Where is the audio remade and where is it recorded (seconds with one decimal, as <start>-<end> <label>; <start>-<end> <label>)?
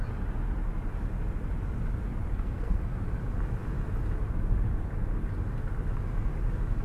0.0-2.3 recorded; 2.3-3.0 remade; 3.0-6.8 recorded